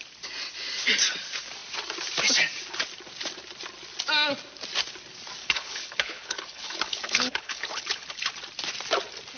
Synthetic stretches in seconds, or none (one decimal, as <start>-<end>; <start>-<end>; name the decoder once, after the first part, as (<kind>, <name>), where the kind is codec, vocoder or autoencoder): 5.4-8.3 (codec, HILCodec)